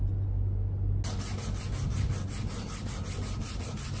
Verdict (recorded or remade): recorded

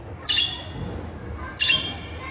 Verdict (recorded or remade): recorded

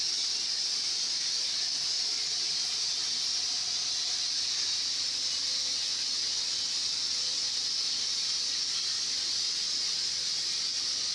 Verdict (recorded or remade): recorded